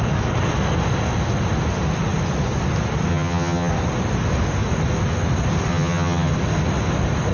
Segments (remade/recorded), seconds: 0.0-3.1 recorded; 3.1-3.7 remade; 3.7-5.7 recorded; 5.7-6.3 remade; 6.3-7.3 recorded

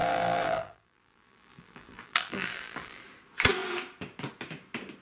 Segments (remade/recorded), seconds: 0.0-3.0 remade; 3.0-5.0 recorded

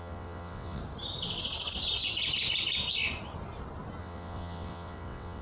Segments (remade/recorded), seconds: 0.0-0.8 remade; 0.8-4.0 recorded; 4.0-5.4 remade

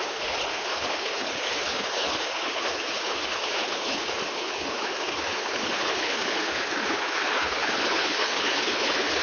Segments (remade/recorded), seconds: 0.0-9.2 remade